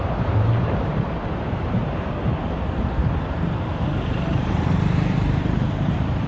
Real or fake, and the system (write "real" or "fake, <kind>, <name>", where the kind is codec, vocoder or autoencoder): fake, vocoder, BigVGAN v2